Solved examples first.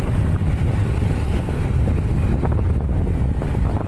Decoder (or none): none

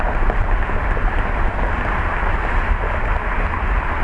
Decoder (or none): none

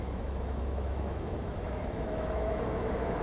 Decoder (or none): autoencoder, DAC-VAE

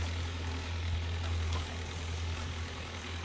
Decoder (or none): codec, DAC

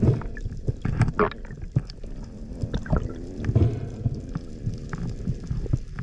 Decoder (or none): none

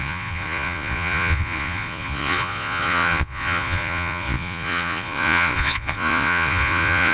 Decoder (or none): vocoder, Vocos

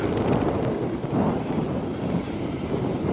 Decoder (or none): none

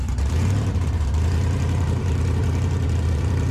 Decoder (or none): vocoder, BigVGAN v2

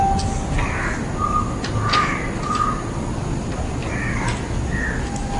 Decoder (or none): none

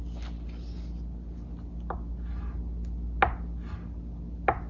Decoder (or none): none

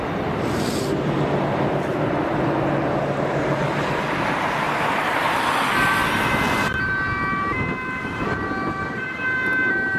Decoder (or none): none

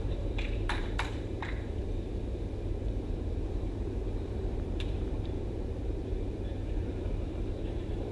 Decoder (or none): vocoder, BigVGAN v2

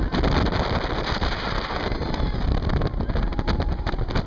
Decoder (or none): none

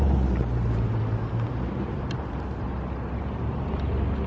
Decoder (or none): none